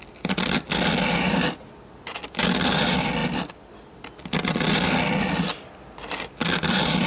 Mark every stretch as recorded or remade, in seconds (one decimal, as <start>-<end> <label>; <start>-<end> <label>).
0.0-7.1 recorded